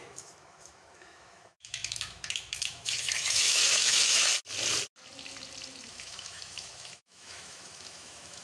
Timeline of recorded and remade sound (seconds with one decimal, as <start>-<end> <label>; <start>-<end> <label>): 0.0-4.3 remade; 4.3-5.9 recorded; 5.9-8.4 remade